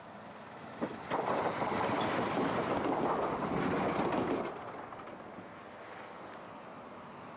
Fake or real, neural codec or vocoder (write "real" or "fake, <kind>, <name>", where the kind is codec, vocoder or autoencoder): real